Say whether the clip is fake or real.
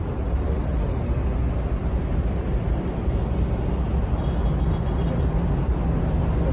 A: real